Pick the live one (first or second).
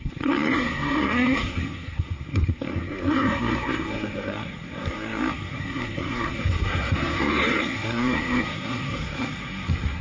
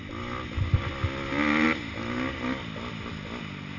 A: second